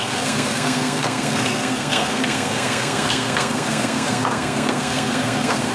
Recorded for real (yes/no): no